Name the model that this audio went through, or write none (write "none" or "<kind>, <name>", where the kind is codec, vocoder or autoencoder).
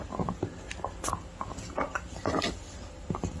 none